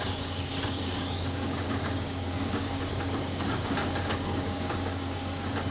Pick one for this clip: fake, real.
fake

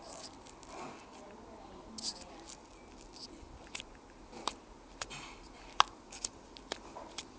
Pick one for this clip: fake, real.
real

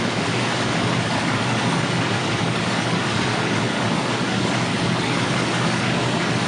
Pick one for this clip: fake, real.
fake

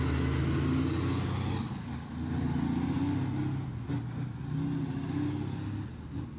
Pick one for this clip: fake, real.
real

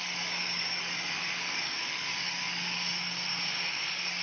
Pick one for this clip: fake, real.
fake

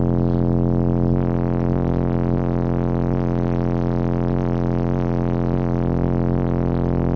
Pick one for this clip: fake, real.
real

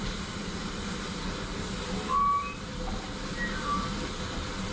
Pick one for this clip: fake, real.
real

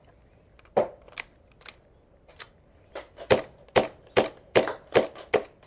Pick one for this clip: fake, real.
real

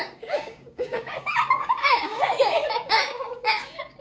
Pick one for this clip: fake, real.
fake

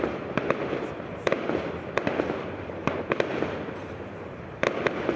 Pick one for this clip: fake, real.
real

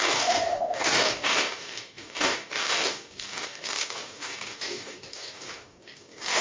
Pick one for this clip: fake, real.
fake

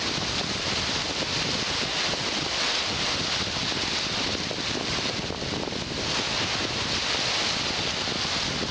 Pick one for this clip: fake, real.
real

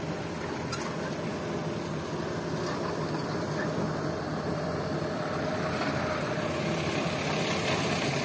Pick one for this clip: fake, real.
real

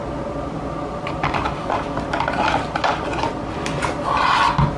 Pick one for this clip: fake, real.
real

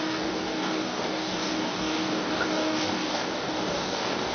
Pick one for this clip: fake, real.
fake